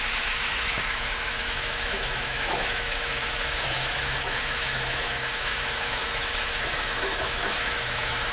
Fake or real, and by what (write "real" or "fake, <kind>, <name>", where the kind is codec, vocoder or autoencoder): fake, autoencoder, DAC-VAE